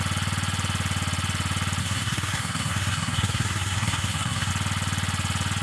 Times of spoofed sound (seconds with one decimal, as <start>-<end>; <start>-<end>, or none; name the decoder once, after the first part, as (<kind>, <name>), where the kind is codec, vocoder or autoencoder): 1.8-4.5 (codec, SNAC)